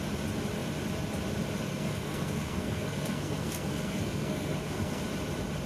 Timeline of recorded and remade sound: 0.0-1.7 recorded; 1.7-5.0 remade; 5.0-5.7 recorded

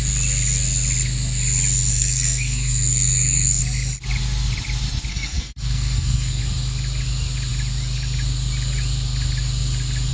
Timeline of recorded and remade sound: 0.0-1.9 recorded; 1.9-3.6 remade; 3.6-5.1 recorded; 5.1-6.4 remade; 6.4-10.1 recorded

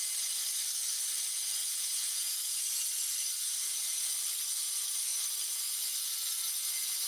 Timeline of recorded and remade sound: 0.0-1.6 recorded; 1.6-2.6 remade; 2.6-3.6 recorded; 3.6-4.1 remade; 4.1-7.1 recorded

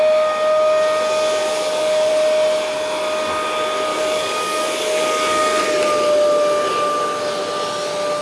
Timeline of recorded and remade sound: 0.0-1.4 recorded; 1.4-2.1 remade; 2.1-3.9 recorded; 3.9-5.6 remade; 5.6-8.2 recorded

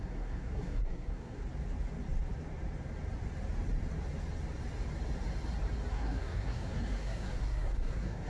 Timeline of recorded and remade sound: 0.0-1.4 remade; 1.4-5.9 recorded; 5.9-8.3 remade

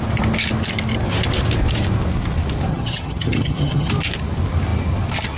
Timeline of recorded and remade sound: 0.0-2.7 recorded; 2.7-3.9 remade; 3.9-5.4 recorded

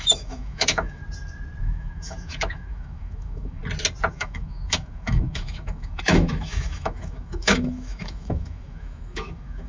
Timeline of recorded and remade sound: 0.0-1.0 remade; 1.0-1.6 recorded; 1.6-3.6 remade; 3.6-4.1 recorded; 4.1-9.7 remade